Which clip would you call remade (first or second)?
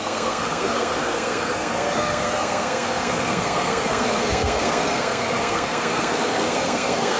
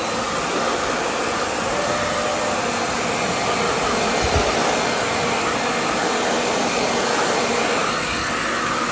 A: first